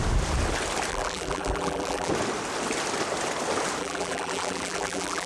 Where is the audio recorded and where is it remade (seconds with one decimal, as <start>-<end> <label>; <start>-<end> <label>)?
0.0-0.9 recorded; 0.9-2.1 remade; 2.1-3.8 recorded; 3.8-5.3 remade